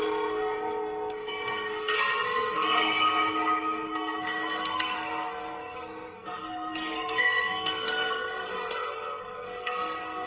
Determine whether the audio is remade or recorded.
remade